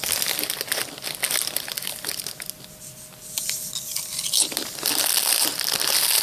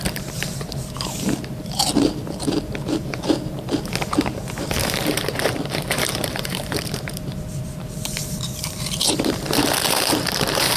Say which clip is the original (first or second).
first